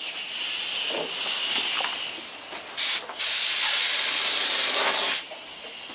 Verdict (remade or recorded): recorded